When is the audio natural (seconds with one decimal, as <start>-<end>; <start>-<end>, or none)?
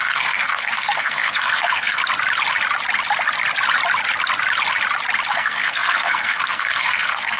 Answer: 2.0-5.3